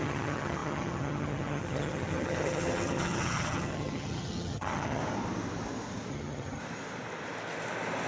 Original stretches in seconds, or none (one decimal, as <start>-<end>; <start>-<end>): 5.0-6.1; 6.6-8.1